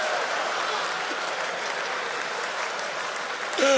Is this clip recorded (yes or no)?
yes